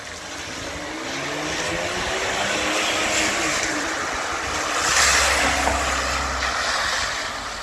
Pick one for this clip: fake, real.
real